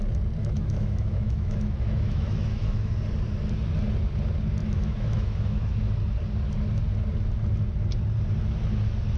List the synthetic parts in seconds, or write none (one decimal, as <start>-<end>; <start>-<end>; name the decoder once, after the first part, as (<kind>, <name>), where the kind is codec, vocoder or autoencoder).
0.4-2.9 (autoencoder, DAC-VAE); 4.6-5.9